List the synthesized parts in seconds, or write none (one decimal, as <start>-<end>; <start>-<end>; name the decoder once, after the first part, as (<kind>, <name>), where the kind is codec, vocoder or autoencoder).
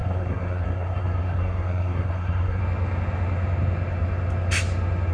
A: 0.0-2.6 (codec, SNAC)